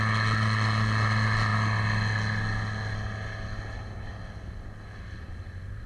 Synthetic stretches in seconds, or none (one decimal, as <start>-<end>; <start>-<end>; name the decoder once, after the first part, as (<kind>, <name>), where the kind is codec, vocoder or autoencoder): none